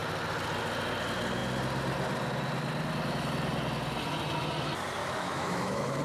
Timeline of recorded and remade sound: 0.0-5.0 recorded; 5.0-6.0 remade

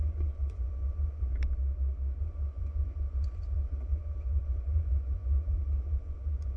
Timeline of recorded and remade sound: 0.0-1.3 remade; 1.3-2.2 recorded; 2.2-6.6 remade

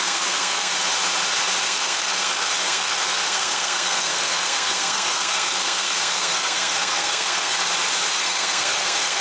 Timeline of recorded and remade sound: 0.0-0.7 remade; 0.7-1.6 recorded; 1.6-7.6 remade; 7.6-8.1 recorded; 8.1-9.2 remade